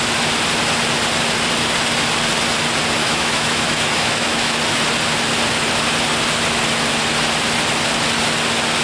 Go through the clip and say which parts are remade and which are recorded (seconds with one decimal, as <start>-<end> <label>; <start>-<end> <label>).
0.0-3.0 recorded; 3.0-4.6 remade; 4.6-8.8 recorded